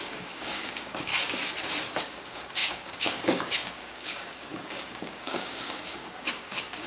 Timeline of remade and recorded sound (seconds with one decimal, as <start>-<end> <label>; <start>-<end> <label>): 0.0-1.1 remade; 1.1-2.0 recorded; 2.0-6.9 remade